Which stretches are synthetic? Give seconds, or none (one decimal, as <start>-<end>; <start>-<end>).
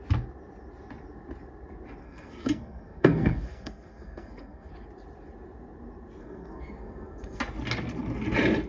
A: 2.0-4.7; 6.2-7.4